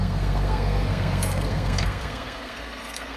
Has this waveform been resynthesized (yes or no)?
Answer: yes